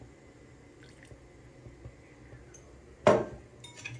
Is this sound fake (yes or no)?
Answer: no